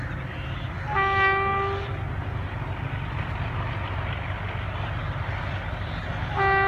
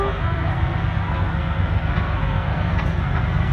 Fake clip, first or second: second